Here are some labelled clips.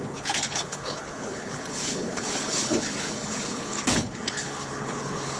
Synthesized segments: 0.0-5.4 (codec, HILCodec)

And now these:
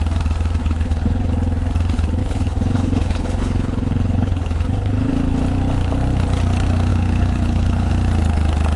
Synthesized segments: 0.6-1.3 (codec, HILCodec); 2.2-5.1; 6.9-7.9

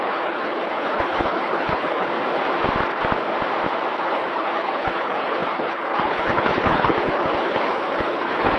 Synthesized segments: 0.0-2.1 (codec, HILCodec); 4.0-8.6